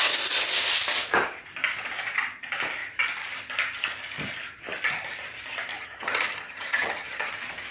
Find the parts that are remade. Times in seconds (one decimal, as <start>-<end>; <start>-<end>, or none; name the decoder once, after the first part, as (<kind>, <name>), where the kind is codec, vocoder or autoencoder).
5.7-7.3 (vocoder, HiFi-GAN)